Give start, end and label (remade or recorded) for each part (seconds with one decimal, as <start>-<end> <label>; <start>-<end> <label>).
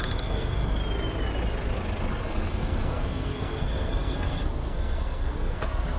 0.0-0.8 remade; 0.8-2.1 recorded; 2.1-6.0 remade